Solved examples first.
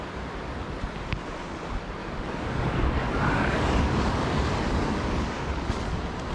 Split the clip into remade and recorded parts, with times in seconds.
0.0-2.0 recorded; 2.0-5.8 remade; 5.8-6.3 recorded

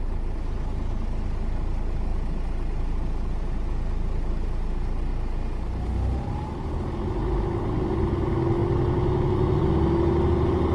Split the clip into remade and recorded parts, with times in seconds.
0.0-10.7 recorded

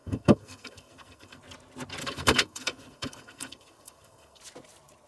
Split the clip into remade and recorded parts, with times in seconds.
0.0-1.4 remade; 1.4-2.0 recorded; 2.0-4.4 remade; 4.4-5.1 recorded

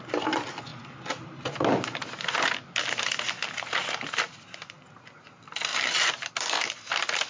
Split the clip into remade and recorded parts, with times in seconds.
0.0-5.7 recorded; 5.7-6.3 remade; 6.3-7.3 recorded

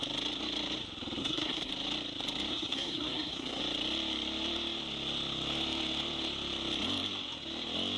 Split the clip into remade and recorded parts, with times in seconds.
0.0-1.2 recorded; 1.2-1.7 remade; 1.7-2.5 recorded; 2.5-3.6 remade; 3.6-8.0 recorded

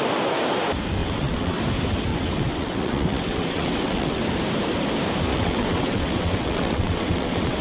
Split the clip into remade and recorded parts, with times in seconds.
0.0-1.0 recorded; 1.0-1.6 remade; 1.6-2.1 recorded; 2.1-4.2 remade; 4.2-5.3 recorded; 5.3-7.6 remade